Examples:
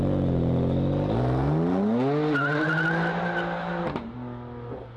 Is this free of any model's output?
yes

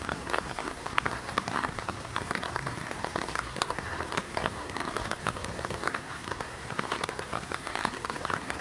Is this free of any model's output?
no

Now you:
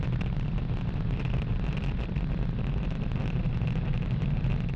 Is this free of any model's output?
yes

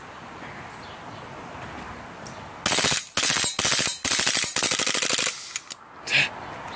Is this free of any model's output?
yes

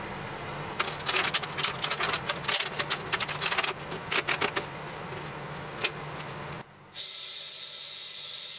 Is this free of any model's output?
yes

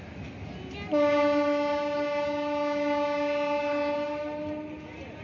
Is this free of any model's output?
yes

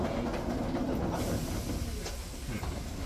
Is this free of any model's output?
yes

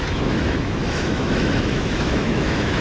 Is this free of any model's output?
no